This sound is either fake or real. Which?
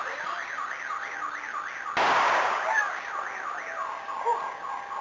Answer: fake